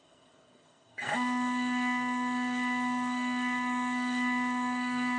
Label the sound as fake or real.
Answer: fake